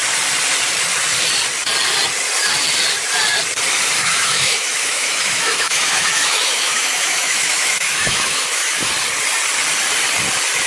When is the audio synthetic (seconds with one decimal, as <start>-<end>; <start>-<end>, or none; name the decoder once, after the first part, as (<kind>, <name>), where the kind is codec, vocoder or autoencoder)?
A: 4.0-8.9 (autoencoder, DAC-VAE)